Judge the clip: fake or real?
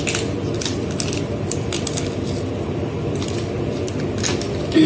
real